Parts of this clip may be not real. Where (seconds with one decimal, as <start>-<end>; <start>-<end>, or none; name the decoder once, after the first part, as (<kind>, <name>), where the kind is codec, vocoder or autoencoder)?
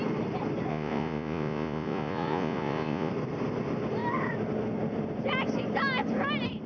0.7-3.1 (vocoder, Vocos)